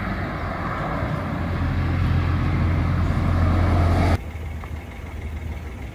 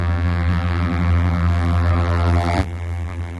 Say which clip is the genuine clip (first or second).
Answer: first